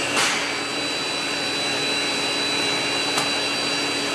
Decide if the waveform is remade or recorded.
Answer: recorded